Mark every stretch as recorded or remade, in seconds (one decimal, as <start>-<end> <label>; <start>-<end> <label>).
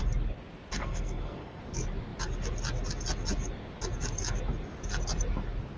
0.0-0.8 recorded; 0.8-1.6 remade; 1.6-5.8 recorded